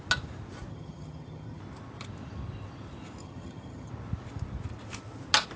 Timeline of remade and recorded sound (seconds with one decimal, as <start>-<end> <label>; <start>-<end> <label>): 0.0-0.7 recorded; 0.7-1.6 remade; 1.6-3.2 recorded; 3.2-3.9 remade; 3.9-5.6 recorded